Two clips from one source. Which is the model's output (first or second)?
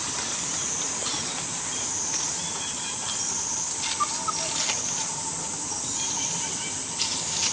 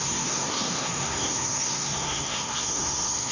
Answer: second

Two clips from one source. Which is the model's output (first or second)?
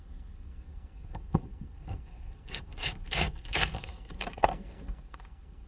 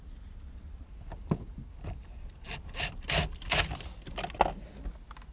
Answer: first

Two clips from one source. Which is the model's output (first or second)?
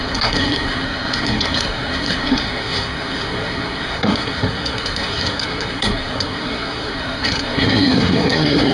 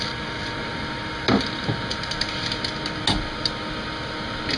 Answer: first